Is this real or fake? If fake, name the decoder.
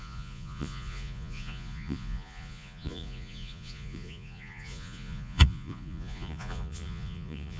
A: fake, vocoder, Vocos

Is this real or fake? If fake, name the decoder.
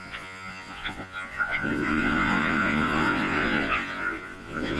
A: fake, vocoder, Vocos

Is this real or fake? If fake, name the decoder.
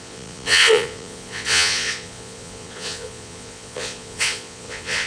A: fake, vocoder, Vocos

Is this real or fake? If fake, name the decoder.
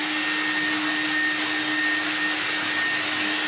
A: real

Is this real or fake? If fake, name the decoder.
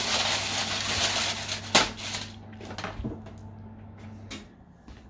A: real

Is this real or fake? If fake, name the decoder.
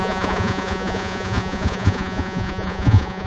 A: fake, vocoder, Vocos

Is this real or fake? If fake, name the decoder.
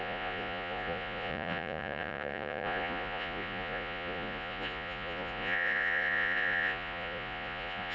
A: fake, vocoder, Vocos